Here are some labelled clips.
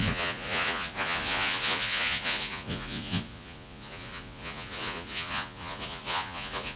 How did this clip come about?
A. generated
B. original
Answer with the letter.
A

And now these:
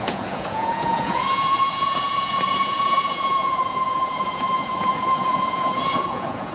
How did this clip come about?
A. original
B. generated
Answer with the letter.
B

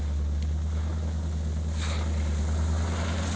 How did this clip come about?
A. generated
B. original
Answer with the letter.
B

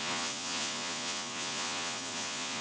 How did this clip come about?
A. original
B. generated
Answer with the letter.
B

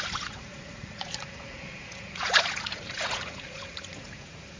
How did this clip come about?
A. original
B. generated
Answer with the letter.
B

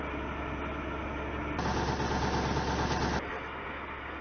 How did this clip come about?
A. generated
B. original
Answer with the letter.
B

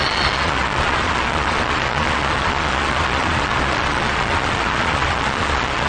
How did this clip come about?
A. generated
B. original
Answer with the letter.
A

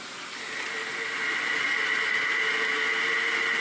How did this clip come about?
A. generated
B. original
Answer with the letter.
B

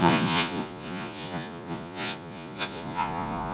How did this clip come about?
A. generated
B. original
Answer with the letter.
A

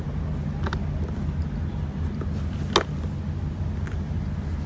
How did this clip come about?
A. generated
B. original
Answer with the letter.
B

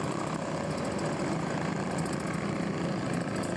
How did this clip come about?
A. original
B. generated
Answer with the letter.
A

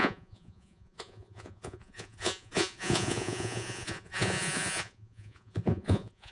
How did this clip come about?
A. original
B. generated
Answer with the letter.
B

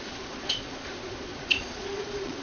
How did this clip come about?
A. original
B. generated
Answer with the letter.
B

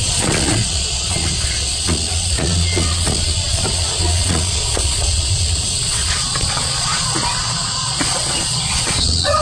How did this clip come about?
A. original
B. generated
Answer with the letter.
B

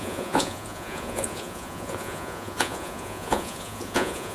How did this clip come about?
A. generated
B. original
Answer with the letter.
A